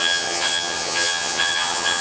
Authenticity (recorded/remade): remade